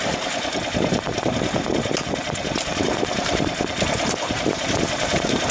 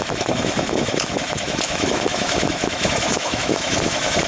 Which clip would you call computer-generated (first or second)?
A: second